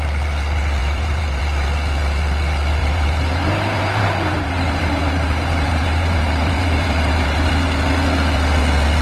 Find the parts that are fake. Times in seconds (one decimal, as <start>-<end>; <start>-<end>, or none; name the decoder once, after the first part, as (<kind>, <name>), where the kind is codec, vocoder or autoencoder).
0.8-1.4 (vocoder, BigVGAN v2); 2.8-7.5